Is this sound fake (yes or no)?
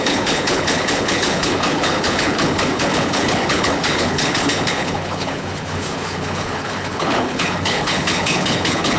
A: yes